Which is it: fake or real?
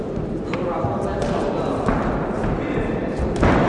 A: real